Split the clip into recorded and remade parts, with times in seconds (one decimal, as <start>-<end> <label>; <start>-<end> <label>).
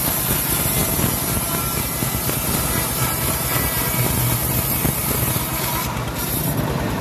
0.0-7.0 recorded